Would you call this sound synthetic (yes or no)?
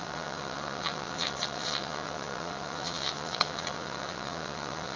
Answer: yes